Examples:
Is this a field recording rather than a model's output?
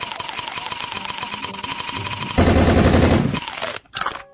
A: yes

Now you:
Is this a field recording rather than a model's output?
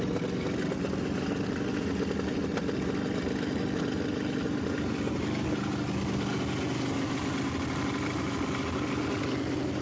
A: yes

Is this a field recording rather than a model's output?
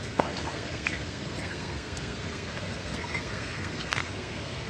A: no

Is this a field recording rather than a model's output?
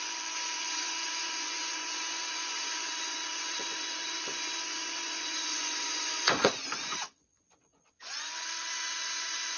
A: no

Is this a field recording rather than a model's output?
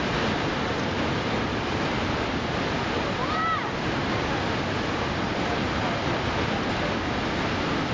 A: yes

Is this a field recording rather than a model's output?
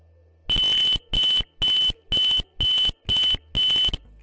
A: yes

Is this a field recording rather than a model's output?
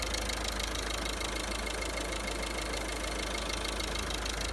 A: yes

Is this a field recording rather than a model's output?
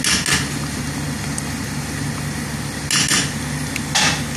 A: yes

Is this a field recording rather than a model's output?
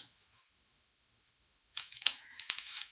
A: no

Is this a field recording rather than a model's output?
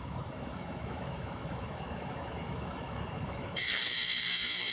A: no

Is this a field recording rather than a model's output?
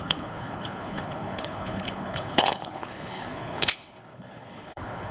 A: no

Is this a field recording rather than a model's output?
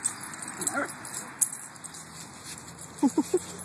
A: yes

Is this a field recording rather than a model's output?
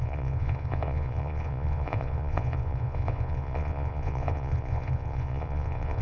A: no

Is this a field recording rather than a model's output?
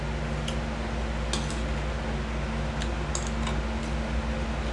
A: yes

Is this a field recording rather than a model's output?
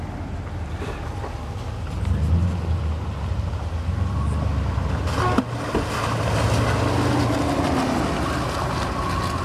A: yes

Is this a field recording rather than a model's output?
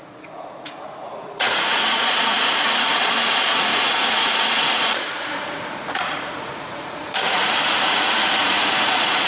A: no